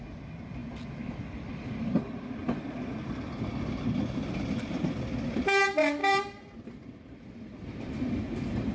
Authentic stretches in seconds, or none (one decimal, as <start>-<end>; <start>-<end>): 0.0-2.4; 4.0-6.0; 7.9-8.7